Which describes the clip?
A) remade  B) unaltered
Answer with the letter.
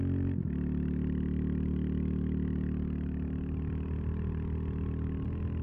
B